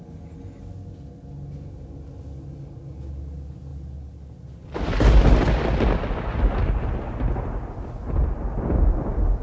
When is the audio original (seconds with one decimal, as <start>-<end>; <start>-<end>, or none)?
0.0-9.4